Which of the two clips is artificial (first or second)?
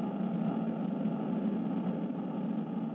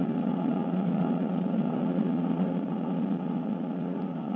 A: second